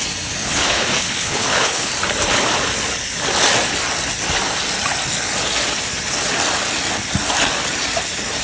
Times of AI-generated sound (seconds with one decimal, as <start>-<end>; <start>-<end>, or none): 0.4-1.9